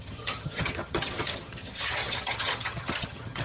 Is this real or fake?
fake